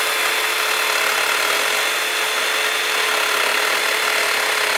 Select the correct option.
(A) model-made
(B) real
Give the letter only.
B